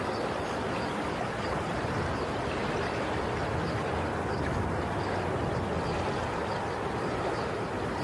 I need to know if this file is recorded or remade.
recorded